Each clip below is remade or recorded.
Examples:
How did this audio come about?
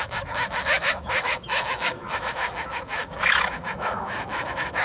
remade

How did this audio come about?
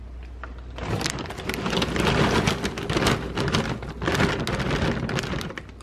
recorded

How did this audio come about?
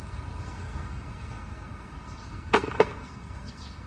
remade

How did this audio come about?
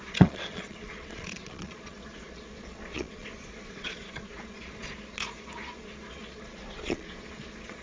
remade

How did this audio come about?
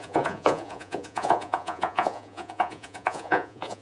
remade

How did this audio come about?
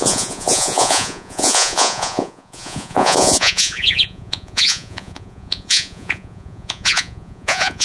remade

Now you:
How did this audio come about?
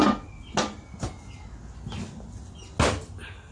recorded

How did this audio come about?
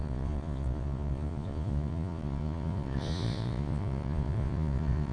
remade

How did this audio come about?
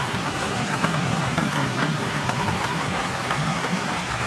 remade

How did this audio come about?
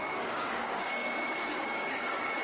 remade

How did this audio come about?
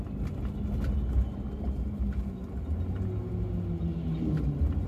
recorded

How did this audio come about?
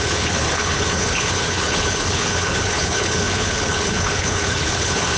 remade